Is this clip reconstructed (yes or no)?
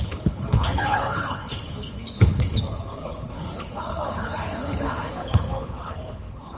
yes